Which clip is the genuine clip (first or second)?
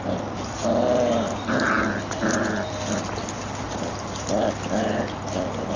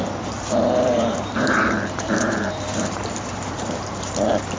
first